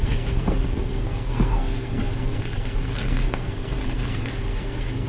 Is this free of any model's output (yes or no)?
no